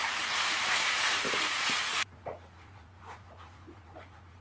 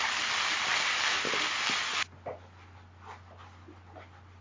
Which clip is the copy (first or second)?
first